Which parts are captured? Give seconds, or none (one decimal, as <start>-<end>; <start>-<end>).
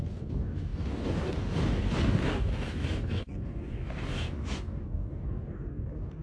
none